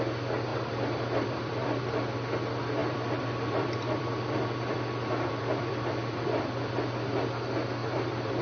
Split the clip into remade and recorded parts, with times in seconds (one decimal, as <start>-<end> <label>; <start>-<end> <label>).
0.0-0.5 recorded; 0.5-1.8 remade; 1.8-2.8 recorded; 2.8-6.8 remade; 6.8-7.8 recorded; 7.8-8.4 remade